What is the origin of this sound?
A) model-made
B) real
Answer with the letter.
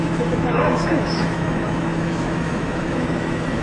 A